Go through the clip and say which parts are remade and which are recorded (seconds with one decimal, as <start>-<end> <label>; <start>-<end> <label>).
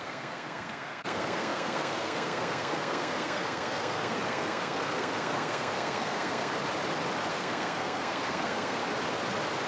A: 0.0-6.5 remade; 6.5-7.3 recorded; 7.3-8.8 remade; 8.8-9.7 recorded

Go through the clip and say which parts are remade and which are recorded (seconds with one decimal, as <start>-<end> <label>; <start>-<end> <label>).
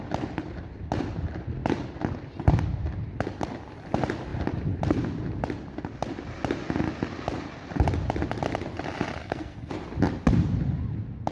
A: 0.0-9.2 recorded; 9.2-9.7 remade; 9.7-11.3 recorded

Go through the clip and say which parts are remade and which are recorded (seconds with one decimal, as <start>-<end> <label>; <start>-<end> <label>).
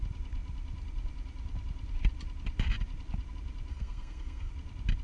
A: 0.0-3.7 recorded; 3.7-4.5 remade; 4.5-5.0 recorded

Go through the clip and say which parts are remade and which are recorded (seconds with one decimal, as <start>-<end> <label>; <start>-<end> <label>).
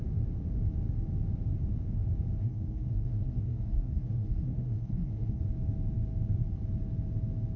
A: 0.0-2.4 recorded; 2.4-5.4 remade; 5.4-7.6 recorded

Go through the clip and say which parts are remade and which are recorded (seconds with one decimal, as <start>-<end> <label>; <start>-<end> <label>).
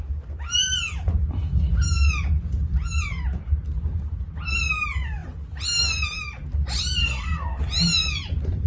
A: 0.0-7.0 recorded; 7.0-7.6 remade; 7.6-8.7 recorded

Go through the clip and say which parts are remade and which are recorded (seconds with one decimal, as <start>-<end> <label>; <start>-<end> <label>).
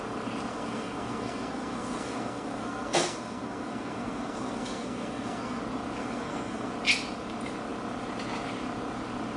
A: 0.0-0.5 recorded; 0.5-5.6 remade; 5.6-6.0 recorded; 6.0-6.7 remade; 6.7-9.4 recorded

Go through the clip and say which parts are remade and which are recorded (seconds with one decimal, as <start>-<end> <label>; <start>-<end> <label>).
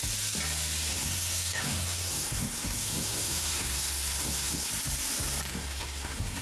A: 0.0-0.9 recorded; 0.9-4.7 remade; 4.7-5.5 recorded; 5.5-6.4 remade